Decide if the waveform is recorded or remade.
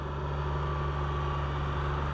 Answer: recorded